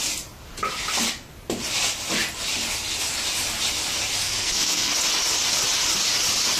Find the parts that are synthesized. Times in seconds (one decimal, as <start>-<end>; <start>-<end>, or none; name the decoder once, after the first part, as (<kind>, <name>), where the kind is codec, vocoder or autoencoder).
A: 4.2-4.9 (codec, SNAC)